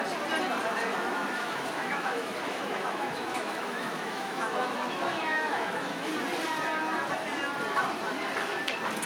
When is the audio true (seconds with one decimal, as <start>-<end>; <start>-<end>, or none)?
0.0-0.9; 6.1-9.1